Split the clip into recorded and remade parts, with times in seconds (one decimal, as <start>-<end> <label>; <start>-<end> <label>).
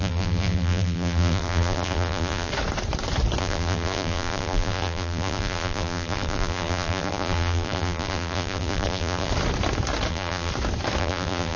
0.0-2.5 remade; 2.5-3.4 recorded; 3.4-9.3 remade; 9.3-10.1 recorded; 10.1-10.5 remade; 10.5-11.0 recorded; 11.0-11.6 remade